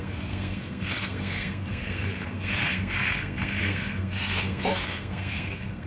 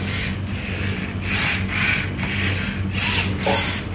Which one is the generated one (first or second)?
first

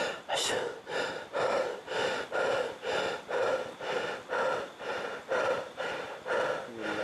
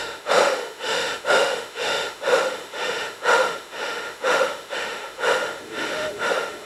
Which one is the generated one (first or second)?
second